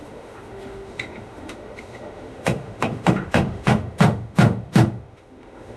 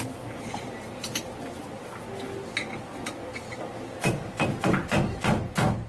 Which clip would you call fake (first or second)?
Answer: first